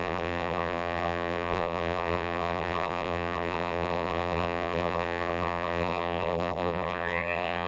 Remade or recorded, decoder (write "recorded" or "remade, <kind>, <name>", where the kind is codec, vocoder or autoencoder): remade, vocoder, BigVGAN v2